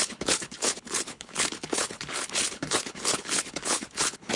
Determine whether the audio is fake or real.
fake